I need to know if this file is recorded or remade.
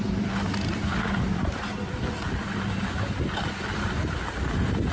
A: recorded